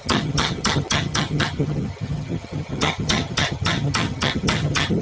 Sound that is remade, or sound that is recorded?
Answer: remade